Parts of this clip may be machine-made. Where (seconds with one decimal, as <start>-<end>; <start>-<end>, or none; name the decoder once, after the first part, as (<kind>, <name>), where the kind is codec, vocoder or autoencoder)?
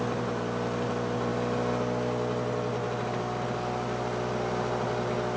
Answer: none